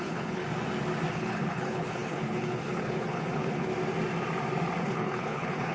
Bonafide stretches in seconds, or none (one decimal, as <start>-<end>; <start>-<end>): 0.4-1.1; 3.7-4.8